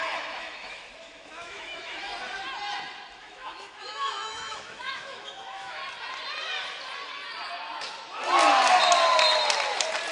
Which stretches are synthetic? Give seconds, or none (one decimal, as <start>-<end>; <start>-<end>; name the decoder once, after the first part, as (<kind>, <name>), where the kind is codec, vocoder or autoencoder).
0.0-2.1 (autoencoder, DAC-VAE); 3.2-5.8